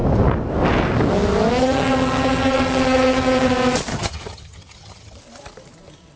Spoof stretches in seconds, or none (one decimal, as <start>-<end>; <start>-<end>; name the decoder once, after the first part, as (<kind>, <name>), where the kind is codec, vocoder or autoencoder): 1.6-3.5 (vocoder, HiFi-GAN); 3.9-5.2

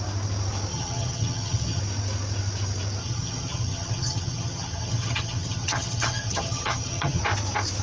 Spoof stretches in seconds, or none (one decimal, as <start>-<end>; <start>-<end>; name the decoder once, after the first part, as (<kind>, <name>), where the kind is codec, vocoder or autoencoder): 0.7-1.8 (vocoder, HiFi-GAN); 3.0-7.2

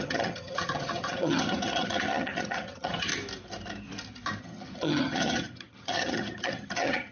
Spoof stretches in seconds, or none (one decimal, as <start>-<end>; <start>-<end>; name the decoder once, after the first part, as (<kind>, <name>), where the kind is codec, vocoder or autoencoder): 0.0-3.1 (vocoder, HiFi-GAN); 4.4-7.1

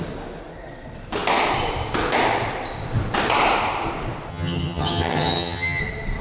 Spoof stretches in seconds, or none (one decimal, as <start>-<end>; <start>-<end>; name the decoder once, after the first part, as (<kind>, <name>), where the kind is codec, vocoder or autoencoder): 4.3-5.8 (vocoder, HiFi-GAN)